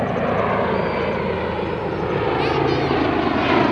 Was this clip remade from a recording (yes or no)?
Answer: no